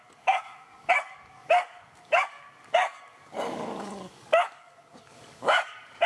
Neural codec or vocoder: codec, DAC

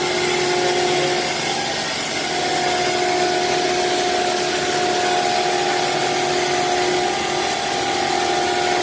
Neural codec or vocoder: none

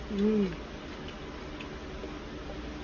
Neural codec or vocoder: none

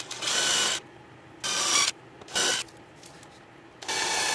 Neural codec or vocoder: none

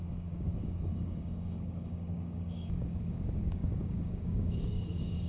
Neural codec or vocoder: codec, DAC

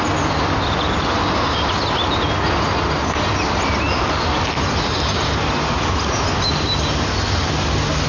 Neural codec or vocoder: none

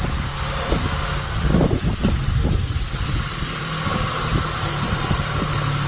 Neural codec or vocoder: none